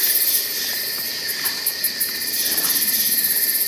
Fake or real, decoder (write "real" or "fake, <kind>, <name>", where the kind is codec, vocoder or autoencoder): fake, vocoder, BigVGAN v2